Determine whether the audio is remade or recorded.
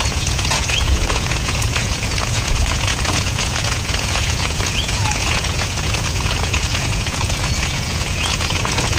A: remade